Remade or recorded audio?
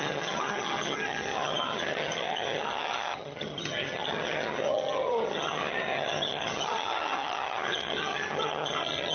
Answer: remade